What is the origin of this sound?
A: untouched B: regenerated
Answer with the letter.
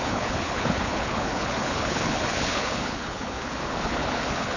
B